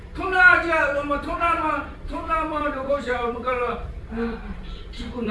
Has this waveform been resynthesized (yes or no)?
yes